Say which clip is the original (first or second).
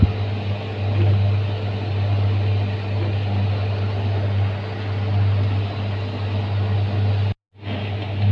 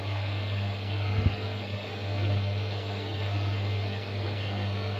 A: first